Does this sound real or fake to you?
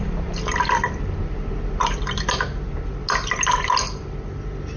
real